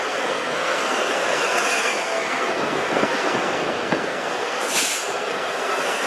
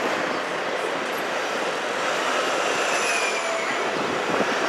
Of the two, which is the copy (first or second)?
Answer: first